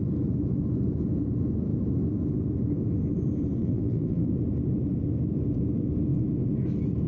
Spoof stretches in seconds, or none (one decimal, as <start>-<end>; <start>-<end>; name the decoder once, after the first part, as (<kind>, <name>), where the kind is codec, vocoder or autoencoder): 3.6-4.3 (vocoder, BigVGAN v2)